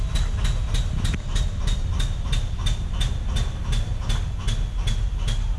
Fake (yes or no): no